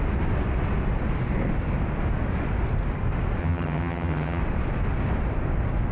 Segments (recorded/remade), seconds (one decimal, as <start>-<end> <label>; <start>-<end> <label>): 0.0-3.4 recorded; 3.4-4.4 remade; 4.4-5.9 recorded